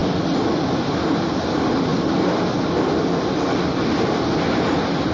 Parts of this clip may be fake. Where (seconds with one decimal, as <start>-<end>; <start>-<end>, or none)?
none